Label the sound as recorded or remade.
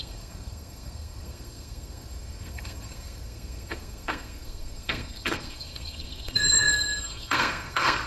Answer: remade